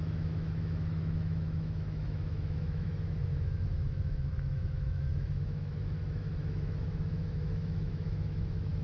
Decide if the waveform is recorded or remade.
remade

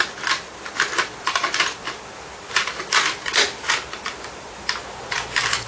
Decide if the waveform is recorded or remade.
recorded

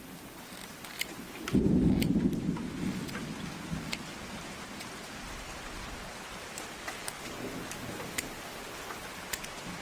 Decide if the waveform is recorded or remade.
recorded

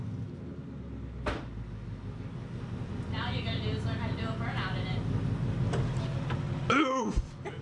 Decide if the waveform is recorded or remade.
recorded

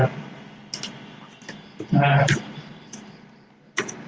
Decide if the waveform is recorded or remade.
recorded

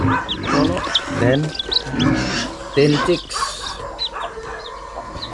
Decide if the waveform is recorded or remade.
recorded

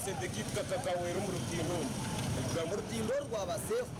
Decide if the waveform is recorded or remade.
remade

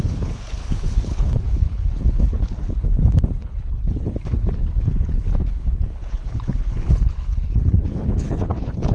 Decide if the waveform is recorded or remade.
remade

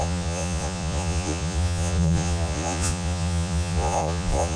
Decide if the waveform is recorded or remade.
remade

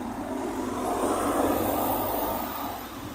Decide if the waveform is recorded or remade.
remade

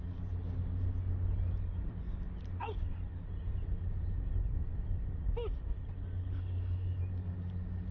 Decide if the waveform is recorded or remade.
recorded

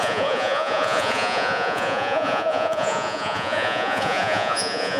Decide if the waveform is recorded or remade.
remade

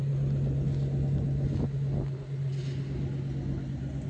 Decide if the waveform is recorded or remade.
recorded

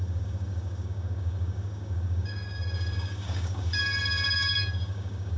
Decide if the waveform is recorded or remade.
remade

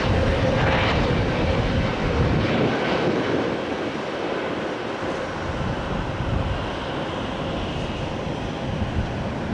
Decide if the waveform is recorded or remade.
recorded